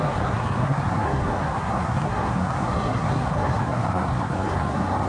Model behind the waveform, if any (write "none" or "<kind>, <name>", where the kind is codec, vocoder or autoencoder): codec, SNAC